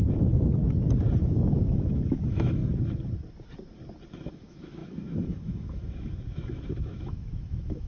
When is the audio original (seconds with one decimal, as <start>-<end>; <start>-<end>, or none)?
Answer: 0.6-1.2; 2.6-4.3